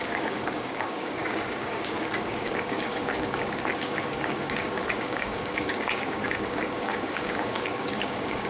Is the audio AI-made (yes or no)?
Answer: yes